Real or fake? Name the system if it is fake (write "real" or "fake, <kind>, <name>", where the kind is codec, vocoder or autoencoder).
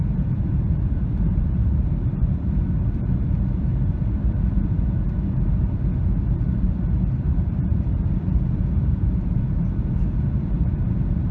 fake, vocoder, BigVGAN v2